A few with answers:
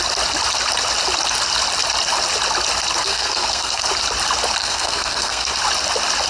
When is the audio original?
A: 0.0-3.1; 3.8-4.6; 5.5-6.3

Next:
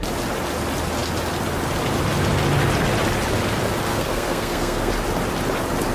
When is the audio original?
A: 0.0-3.9; 4.9-5.9

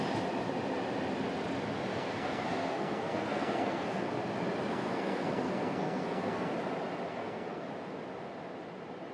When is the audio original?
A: 0.0-1.9; 4.1-4.7; 6.5-7.1; 7.7-9.1